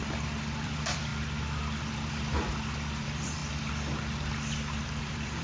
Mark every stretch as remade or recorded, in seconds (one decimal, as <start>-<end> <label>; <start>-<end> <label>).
0.0-1.1 remade; 1.1-2.1 recorded; 2.1-3.4 remade; 3.4-5.0 recorded; 5.0-5.4 remade